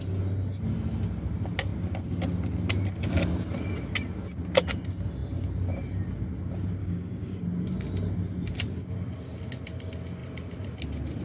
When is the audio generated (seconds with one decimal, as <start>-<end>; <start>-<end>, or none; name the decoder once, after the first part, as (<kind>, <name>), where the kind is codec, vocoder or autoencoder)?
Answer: 6.8-7.4 (codec, DAC)